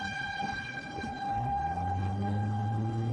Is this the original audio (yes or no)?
no